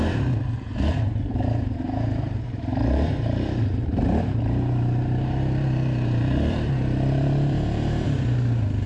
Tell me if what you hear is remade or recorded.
remade